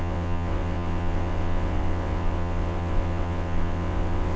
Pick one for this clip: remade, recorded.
remade